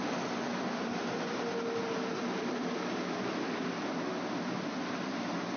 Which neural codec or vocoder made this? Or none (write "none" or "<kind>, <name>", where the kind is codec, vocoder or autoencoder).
none